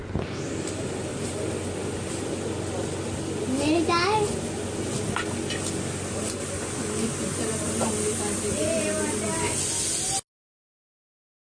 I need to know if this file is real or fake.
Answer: real